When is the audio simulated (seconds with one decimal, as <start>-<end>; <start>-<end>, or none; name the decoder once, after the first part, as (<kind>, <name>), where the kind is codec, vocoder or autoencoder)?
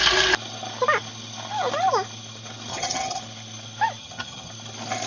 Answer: 2.7-3.2 (vocoder, HiFi-GAN); 4.0-4.5